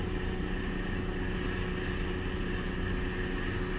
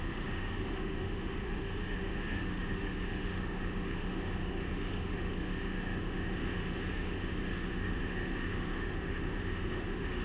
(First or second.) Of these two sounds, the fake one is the second